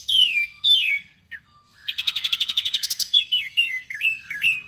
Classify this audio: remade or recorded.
remade